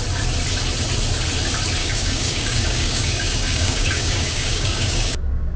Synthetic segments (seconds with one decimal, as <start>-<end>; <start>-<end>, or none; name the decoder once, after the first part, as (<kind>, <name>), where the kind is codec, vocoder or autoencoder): 1.8-5.6 (codec, DAC)